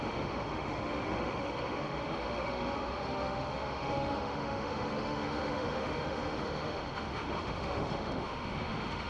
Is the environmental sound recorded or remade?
remade